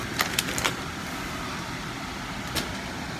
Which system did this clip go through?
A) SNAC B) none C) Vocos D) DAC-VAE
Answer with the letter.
B